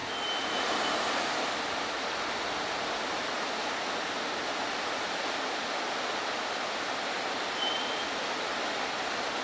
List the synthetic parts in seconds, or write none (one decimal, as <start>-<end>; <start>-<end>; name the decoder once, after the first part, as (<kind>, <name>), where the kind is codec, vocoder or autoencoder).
none